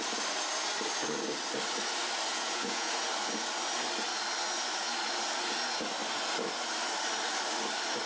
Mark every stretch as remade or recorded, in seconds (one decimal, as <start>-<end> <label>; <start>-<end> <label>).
0.0-2.3 recorded; 2.3-2.9 remade; 2.9-8.1 recorded